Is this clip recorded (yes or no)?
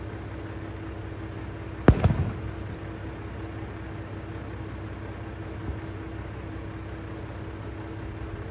yes